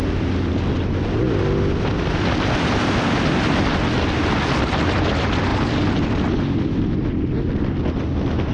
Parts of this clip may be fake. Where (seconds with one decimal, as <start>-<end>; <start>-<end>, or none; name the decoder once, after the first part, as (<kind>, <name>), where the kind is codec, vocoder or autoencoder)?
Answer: 5.5-6.1 (vocoder, BigVGAN v2)